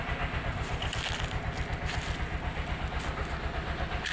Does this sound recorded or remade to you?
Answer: recorded